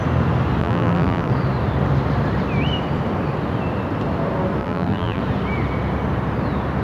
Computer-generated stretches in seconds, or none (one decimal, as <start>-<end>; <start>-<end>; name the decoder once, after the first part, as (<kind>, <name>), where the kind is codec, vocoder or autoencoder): 0.6-1.3 (vocoder, BigVGAN v2); 4.6-5.2